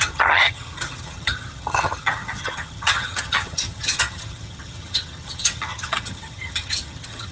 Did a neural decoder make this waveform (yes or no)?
yes